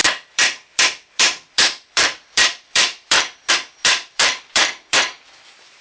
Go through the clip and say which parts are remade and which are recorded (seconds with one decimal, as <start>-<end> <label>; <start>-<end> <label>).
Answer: 0.0-5.8 remade